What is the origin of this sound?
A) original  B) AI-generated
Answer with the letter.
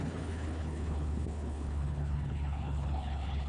B